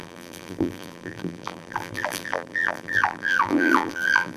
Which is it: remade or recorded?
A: remade